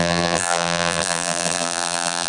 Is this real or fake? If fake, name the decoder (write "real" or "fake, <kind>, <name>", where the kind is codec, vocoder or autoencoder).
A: fake, vocoder, BigVGAN v2